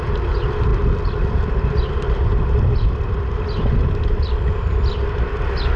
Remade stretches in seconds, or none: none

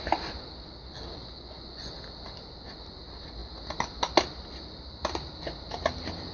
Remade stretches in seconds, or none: 1.2-1.9

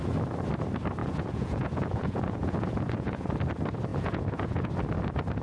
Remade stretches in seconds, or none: 1.0-3.3; 3.9-4.7

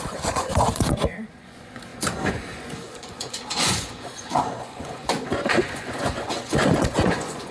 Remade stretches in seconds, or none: 0.0-7.5

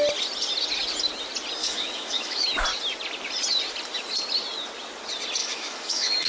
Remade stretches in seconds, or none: 1.6-2.5; 5.4-6.3

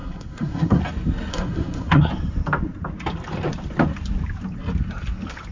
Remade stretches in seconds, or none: 0.0-0.8; 1.3-2.0